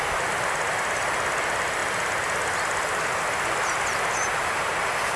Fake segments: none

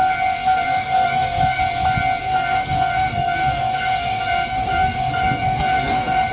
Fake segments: 0.4-1.6 (codec, SNAC); 2.2-6.3

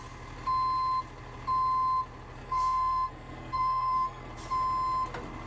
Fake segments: 2.4-4.3 (codec, SNAC)

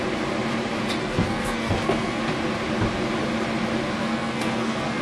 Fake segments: 1.0-2.2 (codec, SNAC); 4.0-5.0